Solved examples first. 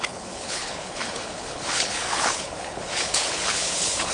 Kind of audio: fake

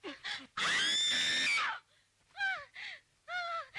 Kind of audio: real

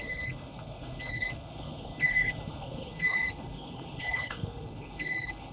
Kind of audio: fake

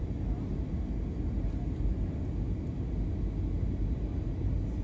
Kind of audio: real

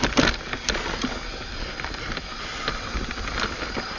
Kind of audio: real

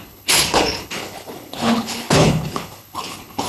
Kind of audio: fake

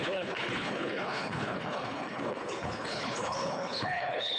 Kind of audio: fake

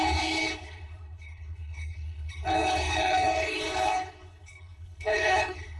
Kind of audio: fake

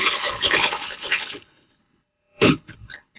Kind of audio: fake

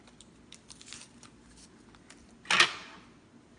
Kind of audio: real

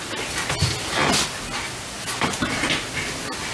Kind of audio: real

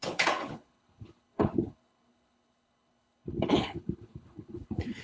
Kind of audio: fake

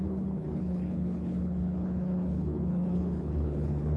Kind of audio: fake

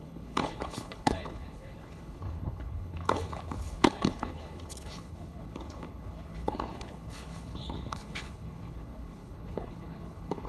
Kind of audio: fake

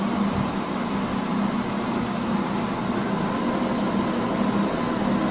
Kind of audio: real